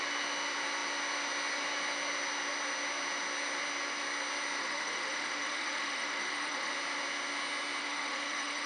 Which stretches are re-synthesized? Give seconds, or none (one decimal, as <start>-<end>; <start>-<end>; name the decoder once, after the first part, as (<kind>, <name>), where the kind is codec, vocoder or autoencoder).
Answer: 4.6-6.7 (autoencoder, DAC-VAE); 7.8-8.7